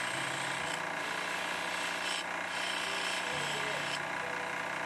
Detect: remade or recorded recorded